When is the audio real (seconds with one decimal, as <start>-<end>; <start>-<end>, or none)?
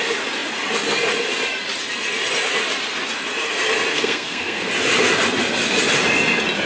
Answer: 0.0-3.9; 4.7-6.7